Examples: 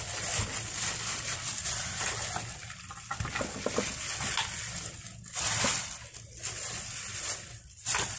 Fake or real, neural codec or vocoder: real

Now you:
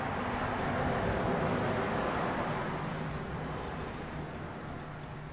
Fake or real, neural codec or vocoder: real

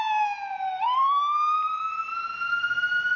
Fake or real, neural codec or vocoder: fake, vocoder, BigVGAN v2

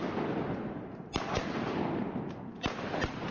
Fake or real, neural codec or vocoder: real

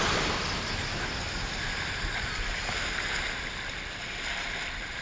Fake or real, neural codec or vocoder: real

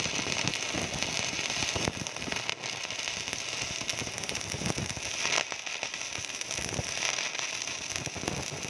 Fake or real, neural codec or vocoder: real